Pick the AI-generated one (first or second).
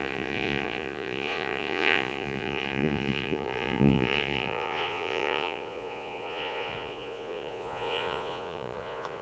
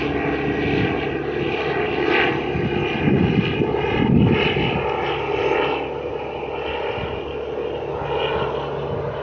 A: first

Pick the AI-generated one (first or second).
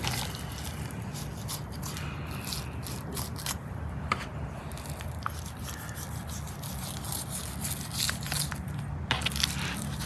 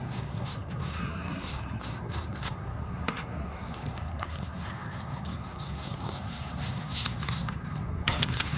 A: second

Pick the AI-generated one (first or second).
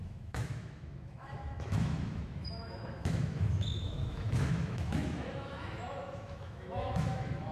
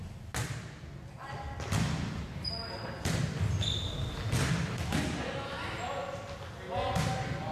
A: first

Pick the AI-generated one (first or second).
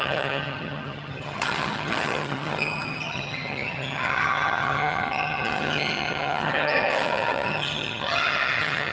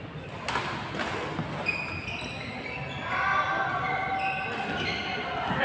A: first